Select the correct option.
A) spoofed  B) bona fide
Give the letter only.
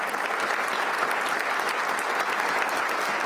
B